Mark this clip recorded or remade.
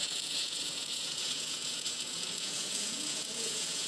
remade